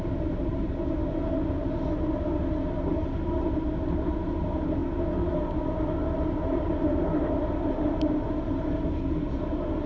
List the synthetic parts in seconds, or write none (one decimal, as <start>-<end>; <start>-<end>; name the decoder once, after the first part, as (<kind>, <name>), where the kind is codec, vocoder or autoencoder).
none